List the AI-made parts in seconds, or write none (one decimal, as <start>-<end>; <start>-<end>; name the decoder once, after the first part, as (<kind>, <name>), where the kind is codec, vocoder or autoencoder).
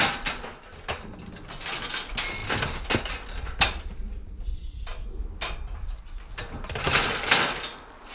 none